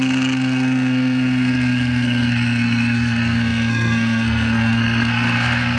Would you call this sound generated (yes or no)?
yes